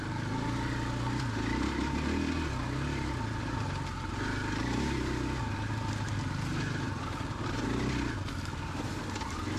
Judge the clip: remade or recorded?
recorded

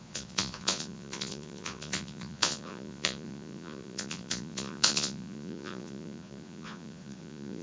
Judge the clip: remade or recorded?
remade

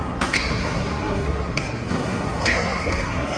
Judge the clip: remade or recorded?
remade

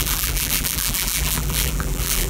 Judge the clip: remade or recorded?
remade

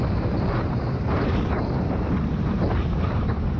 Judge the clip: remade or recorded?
recorded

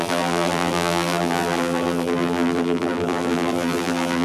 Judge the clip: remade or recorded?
remade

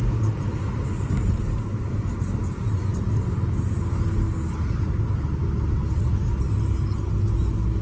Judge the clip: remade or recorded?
recorded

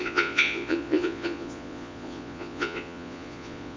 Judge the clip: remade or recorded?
remade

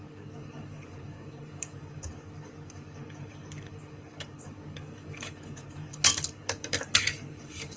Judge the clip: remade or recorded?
remade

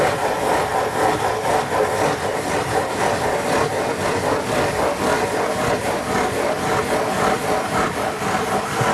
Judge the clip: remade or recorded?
recorded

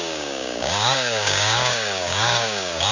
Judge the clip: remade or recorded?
remade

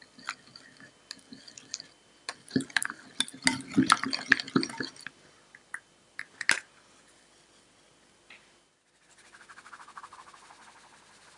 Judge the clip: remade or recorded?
recorded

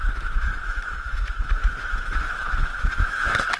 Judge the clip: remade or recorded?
remade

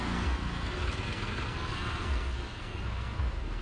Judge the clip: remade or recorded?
remade